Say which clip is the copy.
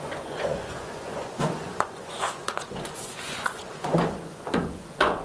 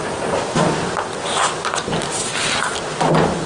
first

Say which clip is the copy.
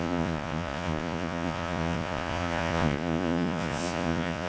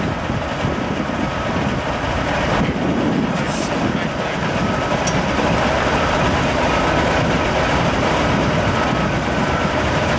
first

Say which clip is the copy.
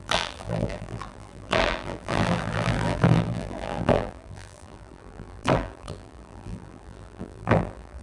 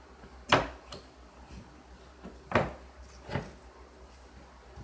first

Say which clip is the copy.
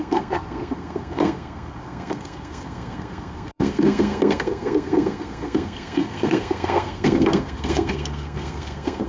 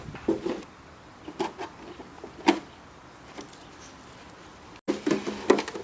first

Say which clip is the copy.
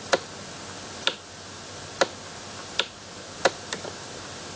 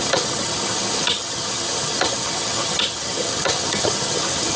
second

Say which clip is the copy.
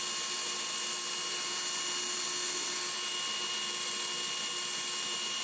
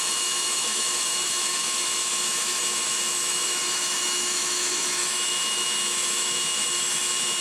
second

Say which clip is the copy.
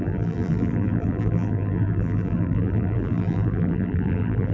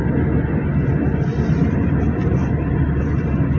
first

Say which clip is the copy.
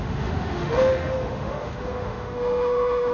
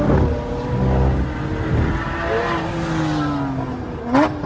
first